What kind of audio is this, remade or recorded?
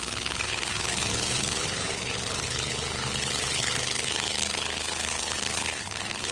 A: remade